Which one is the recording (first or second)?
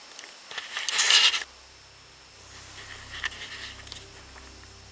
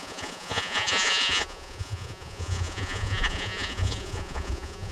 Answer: first